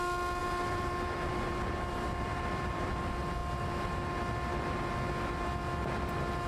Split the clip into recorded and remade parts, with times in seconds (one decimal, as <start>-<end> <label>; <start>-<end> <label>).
0.0-0.4 recorded; 0.4-3.0 remade; 3.0-6.5 recorded